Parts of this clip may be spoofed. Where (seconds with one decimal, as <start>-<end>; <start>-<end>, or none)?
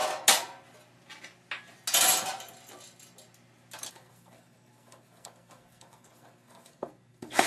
3.9-7.5